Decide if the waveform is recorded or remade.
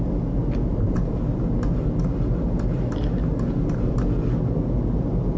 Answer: recorded